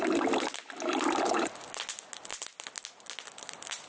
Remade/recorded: recorded